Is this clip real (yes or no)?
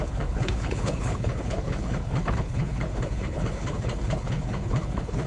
no